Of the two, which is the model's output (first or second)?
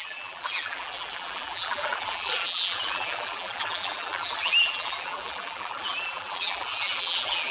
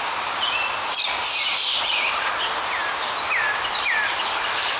first